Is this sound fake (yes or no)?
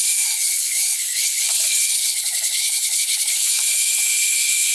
yes